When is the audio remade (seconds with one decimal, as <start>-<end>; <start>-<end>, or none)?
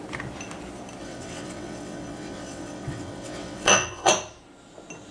1.0-4.1